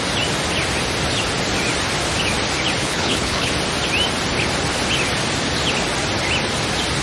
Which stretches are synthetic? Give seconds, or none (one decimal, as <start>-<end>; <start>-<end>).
2.8-3.5